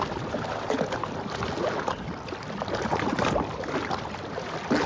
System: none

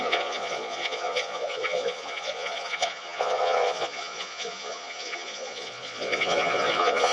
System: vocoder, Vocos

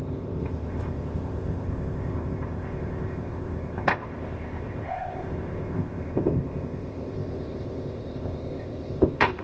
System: codec, ZipCodec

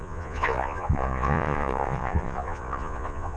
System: vocoder, Vocos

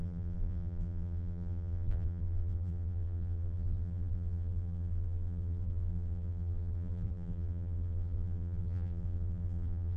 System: vocoder, BigVGAN v2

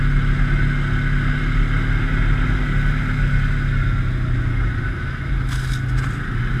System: none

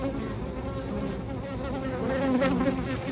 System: none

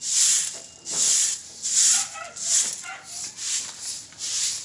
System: none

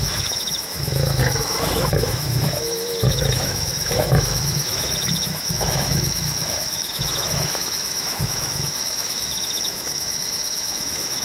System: autoencoder, DAC-VAE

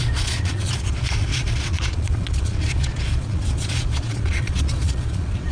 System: vocoder, Vocos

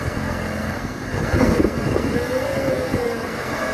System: codec, SNAC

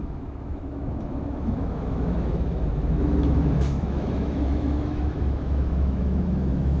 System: autoencoder, DAC-VAE